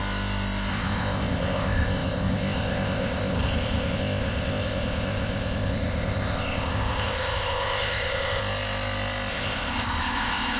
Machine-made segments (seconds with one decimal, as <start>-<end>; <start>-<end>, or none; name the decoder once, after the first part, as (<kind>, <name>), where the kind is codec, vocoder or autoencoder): 0.7-8.4 (codec, ZipCodec); 9.3-10.6